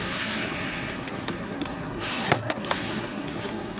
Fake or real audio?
fake